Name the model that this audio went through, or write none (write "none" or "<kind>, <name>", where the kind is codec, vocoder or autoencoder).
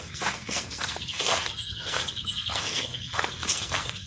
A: codec, SNAC